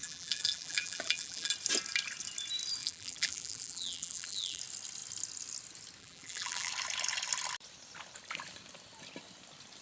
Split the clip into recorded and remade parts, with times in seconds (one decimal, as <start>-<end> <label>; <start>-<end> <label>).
0.0-1.5 remade; 1.5-2.8 recorded; 2.8-4.6 remade; 4.6-6.0 recorded; 6.0-6.7 remade; 6.7-9.8 recorded